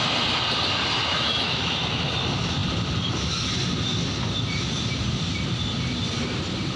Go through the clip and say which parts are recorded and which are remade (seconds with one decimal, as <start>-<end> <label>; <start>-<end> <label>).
0.0-1.1 recorded; 1.1-2.0 remade; 2.0-6.8 recorded